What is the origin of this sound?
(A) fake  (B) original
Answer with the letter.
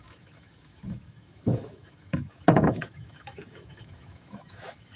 A